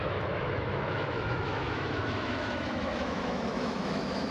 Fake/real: fake